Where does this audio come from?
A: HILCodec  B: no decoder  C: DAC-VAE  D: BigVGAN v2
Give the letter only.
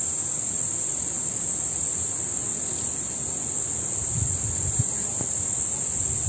B